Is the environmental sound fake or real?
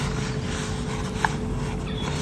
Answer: fake